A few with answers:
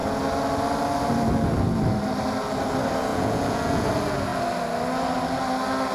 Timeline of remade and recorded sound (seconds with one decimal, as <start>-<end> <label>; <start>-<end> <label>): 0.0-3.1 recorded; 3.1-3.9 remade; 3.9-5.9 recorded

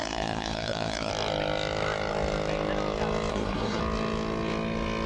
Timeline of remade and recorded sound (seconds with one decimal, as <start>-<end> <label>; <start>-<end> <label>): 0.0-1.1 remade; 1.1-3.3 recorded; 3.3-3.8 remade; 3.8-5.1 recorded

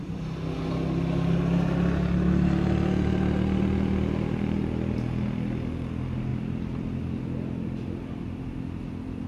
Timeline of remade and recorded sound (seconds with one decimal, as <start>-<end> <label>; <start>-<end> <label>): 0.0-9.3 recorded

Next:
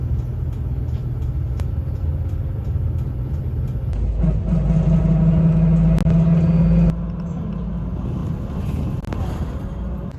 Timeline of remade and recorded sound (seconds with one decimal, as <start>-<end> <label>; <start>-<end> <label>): 0.0-10.2 recorded

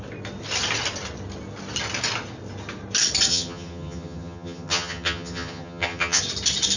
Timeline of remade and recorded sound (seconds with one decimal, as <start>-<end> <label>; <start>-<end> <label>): 0.0-3.3 recorded; 3.3-6.2 remade; 6.2-6.8 recorded

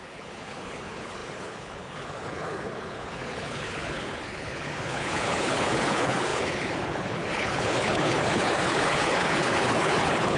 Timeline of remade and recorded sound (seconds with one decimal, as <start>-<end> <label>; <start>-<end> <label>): 0.0-10.4 remade

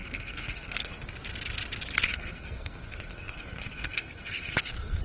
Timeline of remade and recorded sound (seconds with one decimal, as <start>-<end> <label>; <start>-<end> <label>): 0.0-1.0 remade; 1.0-2.1 recorded; 2.1-5.0 remade